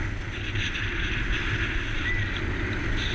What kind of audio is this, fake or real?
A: real